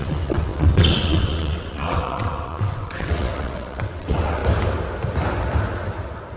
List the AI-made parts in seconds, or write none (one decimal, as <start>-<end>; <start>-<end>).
0.0-4.4